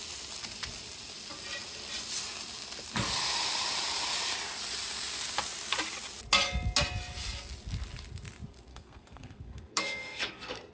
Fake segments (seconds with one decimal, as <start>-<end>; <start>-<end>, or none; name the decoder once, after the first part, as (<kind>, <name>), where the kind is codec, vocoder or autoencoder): 8.7-10.7 (codec, SNAC)